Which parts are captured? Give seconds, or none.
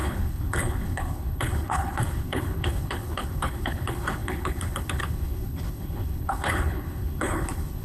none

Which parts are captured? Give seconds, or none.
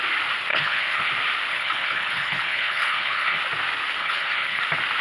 0.0-0.5; 1.1-1.5; 3.4-4.0; 4.6-5.0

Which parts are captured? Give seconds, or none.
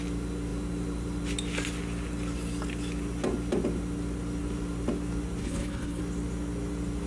0.0-5.4; 6.0-7.1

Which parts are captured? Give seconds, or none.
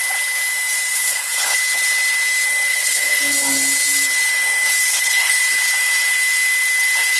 0.0-0.9; 1.6-2.7; 3.2-4.9; 5.4-7.2